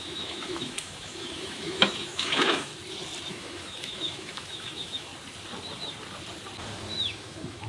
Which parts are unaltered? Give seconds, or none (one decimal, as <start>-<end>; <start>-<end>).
2.7-3.3; 5.1-6.9